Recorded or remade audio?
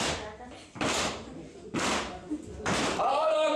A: remade